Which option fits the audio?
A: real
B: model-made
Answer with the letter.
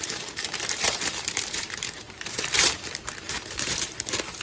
B